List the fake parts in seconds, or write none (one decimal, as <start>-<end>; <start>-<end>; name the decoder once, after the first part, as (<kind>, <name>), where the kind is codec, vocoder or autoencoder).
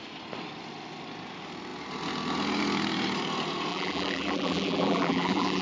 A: 3.7-5.6 (vocoder, BigVGAN v2)